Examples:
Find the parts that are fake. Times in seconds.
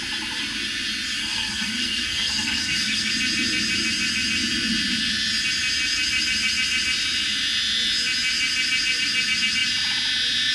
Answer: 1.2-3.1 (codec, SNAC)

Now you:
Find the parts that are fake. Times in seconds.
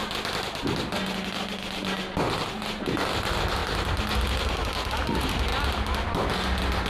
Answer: none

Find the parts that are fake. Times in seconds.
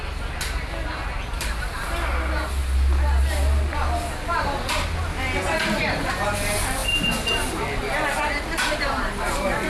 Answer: none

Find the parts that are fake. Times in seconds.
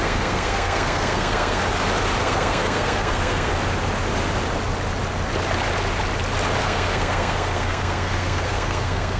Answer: 0.0-1.6 (codec, SNAC); 2.2-3.5; 6.6-9.2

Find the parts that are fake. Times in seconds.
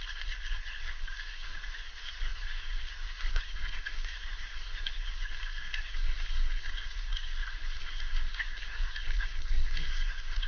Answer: 0.0-10.5 (codec, SNAC)